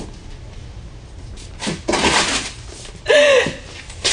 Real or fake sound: real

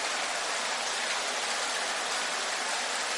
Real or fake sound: fake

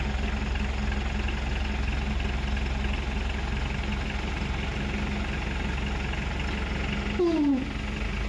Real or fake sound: real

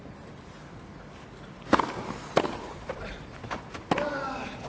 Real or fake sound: real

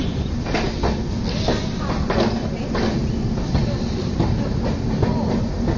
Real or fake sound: real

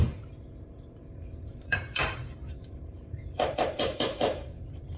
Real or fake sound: fake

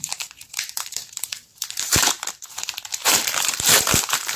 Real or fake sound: fake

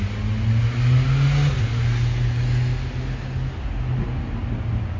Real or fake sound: real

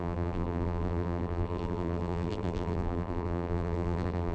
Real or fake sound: fake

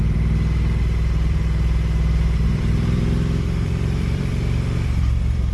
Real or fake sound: fake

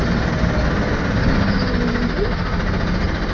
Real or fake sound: real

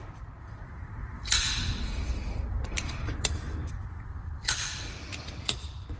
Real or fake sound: fake